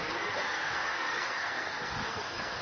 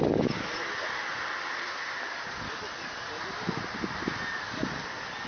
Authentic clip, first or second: second